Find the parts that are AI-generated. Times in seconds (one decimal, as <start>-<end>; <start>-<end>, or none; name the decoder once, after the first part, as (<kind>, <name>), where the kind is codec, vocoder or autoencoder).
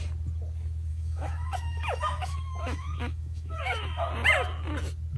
0.9-4.0 (autoencoder, DAC-VAE)